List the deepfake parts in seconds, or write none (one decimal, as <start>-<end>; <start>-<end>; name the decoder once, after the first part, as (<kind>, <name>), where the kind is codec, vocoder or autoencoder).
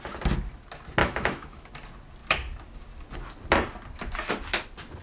1.0-1.7 (autoencoder, DAC-VAE)